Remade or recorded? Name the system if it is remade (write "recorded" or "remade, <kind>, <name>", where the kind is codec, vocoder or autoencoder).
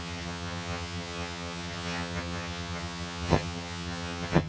remade, vocoder, HiFi-GAN